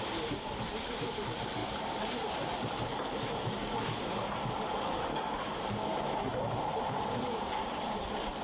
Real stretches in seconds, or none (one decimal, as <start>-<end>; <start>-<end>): 0.0-6.3